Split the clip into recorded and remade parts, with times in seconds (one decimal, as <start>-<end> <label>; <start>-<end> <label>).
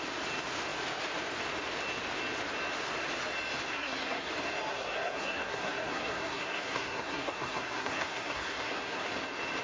0.0-3.7 recorded; 3.7-4.3 remade; 4.3-4.7 recorded; 4.7-9.1 remade; 9.1-9.6 recorded